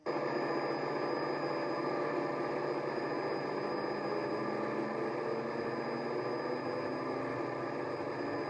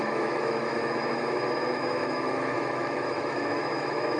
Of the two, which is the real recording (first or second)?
first